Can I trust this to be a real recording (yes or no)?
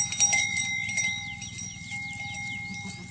yes